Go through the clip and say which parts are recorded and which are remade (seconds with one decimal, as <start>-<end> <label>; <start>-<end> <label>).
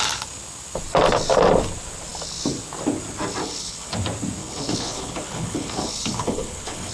0.0-3.4 recorded; 3.4-3.9 remade; 3.9-4.4 recorded; 4.4-6.9 remade